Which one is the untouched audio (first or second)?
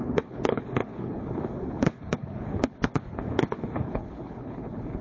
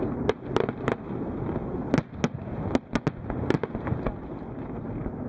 second